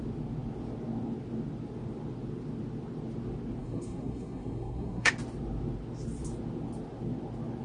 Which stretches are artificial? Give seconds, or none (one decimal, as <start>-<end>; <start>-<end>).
3.6-5.1